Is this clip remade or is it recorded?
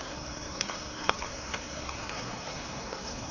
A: remade